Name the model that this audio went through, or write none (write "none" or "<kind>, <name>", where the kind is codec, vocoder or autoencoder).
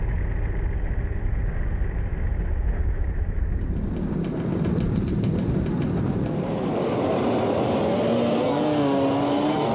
none